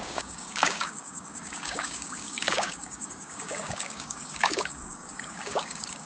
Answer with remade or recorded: remade